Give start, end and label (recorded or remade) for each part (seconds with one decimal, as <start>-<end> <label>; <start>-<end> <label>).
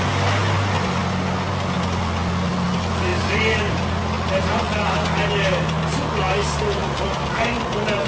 0.0-8.1 recorded